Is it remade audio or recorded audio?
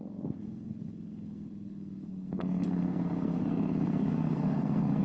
remade